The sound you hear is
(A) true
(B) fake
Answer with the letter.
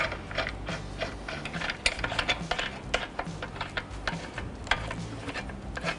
A